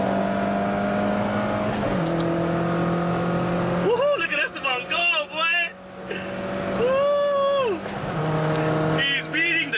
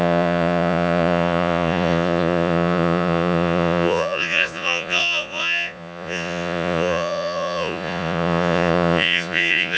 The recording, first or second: first